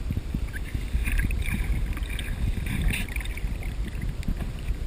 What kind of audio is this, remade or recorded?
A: remade